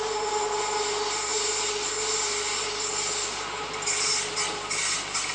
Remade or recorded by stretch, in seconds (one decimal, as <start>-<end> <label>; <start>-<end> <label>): 0.0-5.3 recorded